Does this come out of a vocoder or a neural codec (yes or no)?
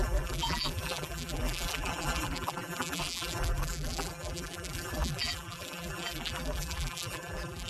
yes